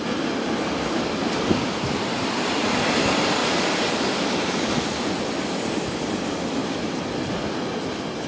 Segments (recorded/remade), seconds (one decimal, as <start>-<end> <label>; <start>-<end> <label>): 0.0-8.3 recorded